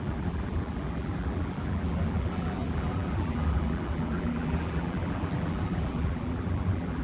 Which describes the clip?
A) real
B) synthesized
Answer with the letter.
B